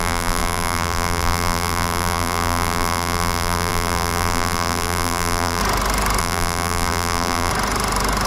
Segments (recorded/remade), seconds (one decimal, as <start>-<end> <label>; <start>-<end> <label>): 0.0-5.6 remade; 5.6-6.2 recorded; 6.2-7.5 remade; 7.5-8.3 recorded